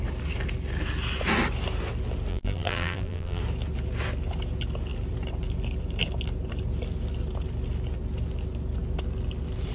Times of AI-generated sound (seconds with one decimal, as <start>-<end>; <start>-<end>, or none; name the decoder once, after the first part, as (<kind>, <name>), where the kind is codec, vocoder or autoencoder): 2.3-3.4 (vocoder, BigVGAN v2)